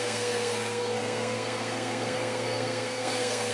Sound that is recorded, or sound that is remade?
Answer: remade